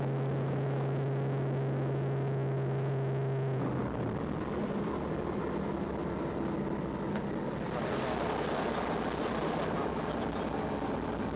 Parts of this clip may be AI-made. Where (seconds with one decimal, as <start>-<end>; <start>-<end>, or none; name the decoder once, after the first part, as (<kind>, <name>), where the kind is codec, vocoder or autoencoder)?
none